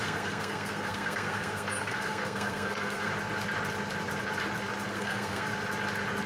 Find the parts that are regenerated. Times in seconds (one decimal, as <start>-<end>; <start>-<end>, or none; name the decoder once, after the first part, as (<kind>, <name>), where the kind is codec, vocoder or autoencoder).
0.0-3.1 (codec, SNAC); 4.9-5.5